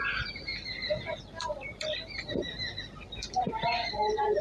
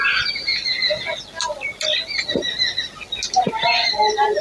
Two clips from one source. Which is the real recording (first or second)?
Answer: second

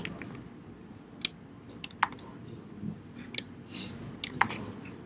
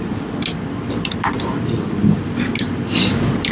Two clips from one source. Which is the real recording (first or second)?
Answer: first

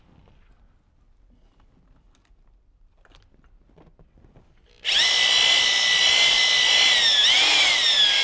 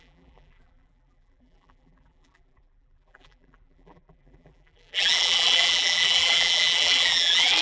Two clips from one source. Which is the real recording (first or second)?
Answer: first